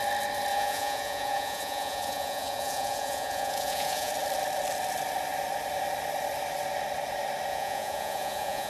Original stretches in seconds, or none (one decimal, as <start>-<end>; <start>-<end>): 0.0-0.5; 4.1-7.5